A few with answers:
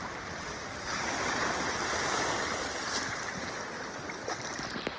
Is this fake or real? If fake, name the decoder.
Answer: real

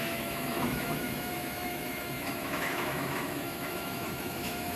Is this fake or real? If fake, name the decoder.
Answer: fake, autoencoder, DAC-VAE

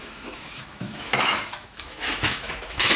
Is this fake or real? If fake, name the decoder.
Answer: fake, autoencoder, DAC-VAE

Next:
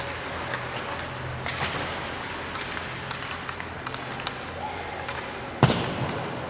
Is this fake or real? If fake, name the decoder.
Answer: real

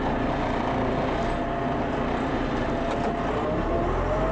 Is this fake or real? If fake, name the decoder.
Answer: real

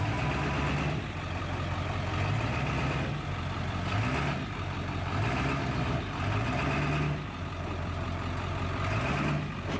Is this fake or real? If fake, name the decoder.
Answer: real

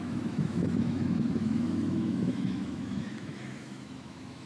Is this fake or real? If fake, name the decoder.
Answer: fake, autoencoder, DAC-VAE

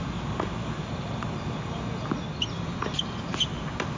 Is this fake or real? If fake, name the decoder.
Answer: real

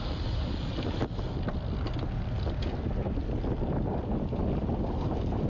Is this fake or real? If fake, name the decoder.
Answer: real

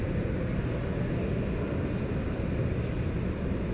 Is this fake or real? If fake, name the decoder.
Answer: real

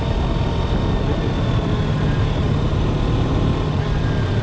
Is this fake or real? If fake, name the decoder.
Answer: real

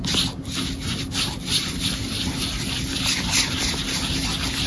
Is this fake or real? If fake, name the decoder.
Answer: real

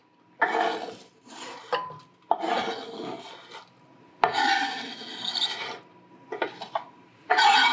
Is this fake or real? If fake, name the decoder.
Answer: real